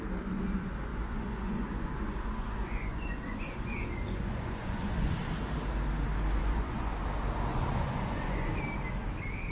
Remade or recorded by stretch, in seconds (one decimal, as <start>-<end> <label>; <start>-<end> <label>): 0.0-0.9 recorded; 0.9-5.3 remade; 5.3-6.4 recorded; 6.4-7.0 remade; 7.0-7.5 recorded; 7.5-8.5 remade; 8.5-9.5 recorded